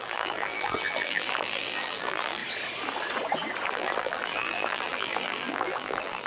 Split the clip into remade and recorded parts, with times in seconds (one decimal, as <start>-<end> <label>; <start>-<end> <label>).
0.0-2.4 remade; 2.4-3.7 recorded; 3.7-6.3 remade